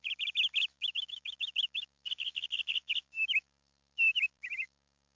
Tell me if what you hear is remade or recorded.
remade